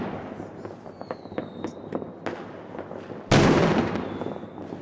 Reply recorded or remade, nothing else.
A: recorded